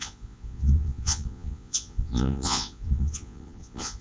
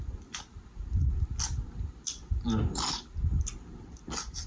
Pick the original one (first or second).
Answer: second